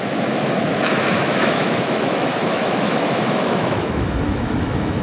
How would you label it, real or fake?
fake